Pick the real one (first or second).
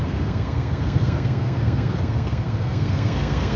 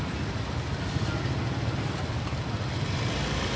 second